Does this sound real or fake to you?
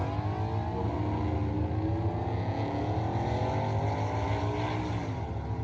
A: real